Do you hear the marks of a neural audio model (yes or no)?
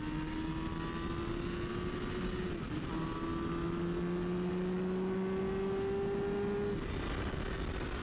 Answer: no